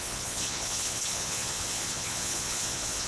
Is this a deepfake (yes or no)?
yes